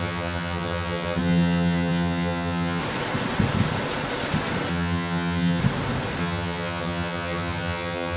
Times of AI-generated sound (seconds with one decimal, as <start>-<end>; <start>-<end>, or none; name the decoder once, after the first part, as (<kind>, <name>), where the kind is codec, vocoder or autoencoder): 0.0-2.8 (vocoder, HiFi-GAN); 4.7-5.6; 6.2-8.2